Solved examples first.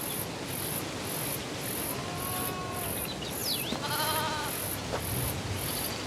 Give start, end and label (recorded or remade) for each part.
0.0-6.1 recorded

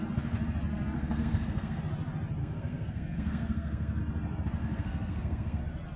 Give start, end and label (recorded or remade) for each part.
0.0-0.7 recorded; 0.7-1.8 remade; 1.8-2.4 recorded; 2.4-4.0 remade; 4.0-4.6 recorded; 4.6-5.6 remade; 5.6-6.0 recorded

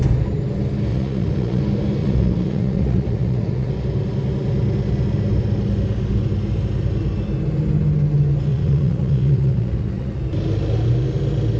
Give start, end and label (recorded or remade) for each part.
0.0-0.9 recorded; 0.9-1.6 remade; 1.6-2.0 recorded; 2.0-3.7 remade; 3.7-8.5 recorded; 8.5-10.2 remade; 10.2-11.6 recorded

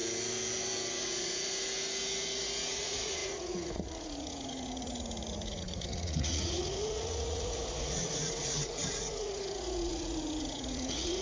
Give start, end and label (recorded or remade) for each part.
0.0-2.7 recorded; 2.7-11.2 remade